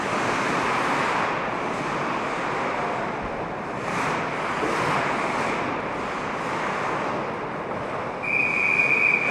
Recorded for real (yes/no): yes